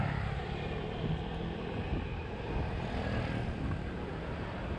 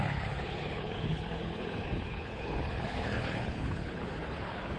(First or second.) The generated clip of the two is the second